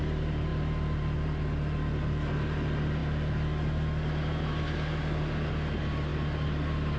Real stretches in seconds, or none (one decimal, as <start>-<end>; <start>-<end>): 0.0-7.0